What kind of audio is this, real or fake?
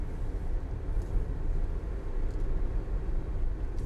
real